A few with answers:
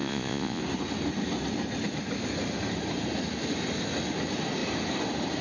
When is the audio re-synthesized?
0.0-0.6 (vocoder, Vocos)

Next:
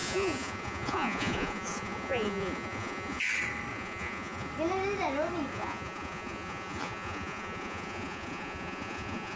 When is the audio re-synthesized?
0.0-3.2 (vocoder, Vocos); 3.7-4.5; 5.5-9.4

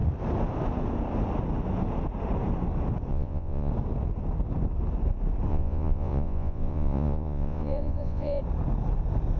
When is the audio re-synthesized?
3.1-3.7 (vocoder, Vocos); 5.5-8.4

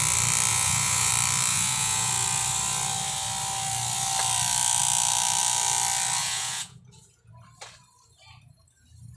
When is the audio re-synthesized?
0.5-1.1 (vocoder, Vocos); 1.5-2.1; 6.2-7.3

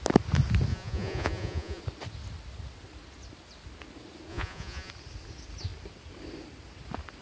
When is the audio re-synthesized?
0.7-1.8 (vocoder, Vocos); 4.3-4.9

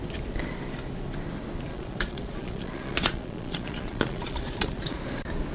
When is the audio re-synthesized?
1.7-5.0 (vocoder, Vocos)

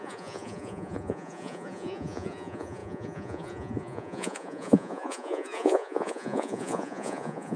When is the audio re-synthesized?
0.0-7.6 (vocoder, Vocos)